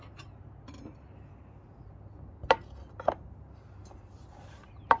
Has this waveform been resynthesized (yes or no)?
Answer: no